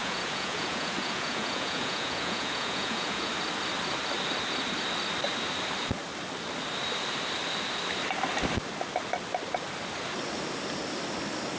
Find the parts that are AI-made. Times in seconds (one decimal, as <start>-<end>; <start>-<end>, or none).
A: 0.0-3.3